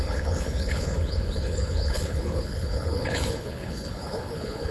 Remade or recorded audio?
remade